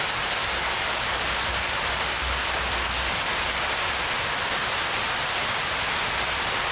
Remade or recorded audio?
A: recorded